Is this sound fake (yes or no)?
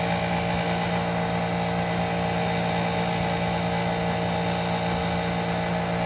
no